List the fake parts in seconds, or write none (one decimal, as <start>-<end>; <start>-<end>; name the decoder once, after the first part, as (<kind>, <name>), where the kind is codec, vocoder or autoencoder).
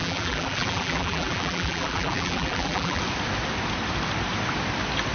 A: 0.0-3.0 (vocoder, BigVGAN v2)